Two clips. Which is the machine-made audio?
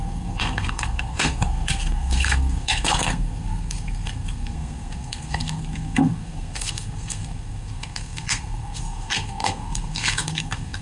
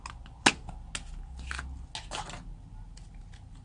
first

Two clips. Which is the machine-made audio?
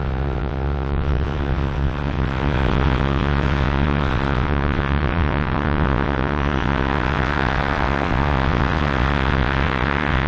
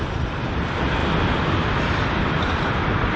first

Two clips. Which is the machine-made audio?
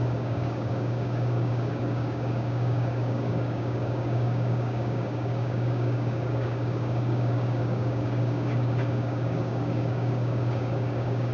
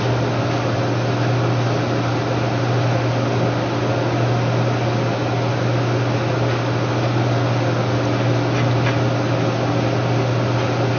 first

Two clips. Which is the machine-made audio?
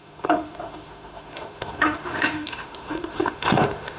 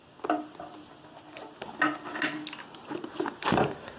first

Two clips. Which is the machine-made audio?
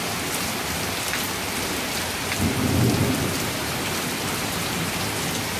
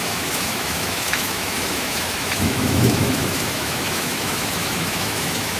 second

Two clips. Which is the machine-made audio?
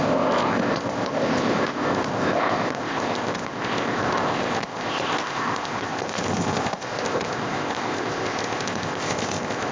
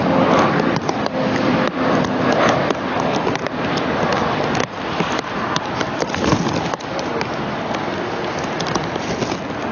first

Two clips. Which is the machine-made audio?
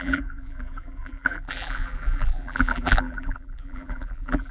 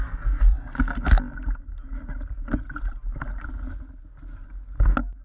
first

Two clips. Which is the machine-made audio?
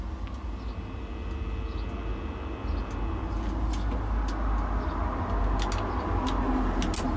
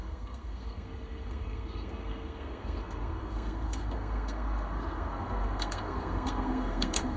second